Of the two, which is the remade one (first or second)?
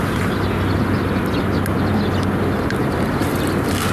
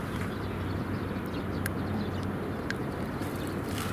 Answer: second